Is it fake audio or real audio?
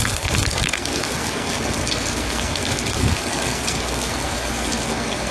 fake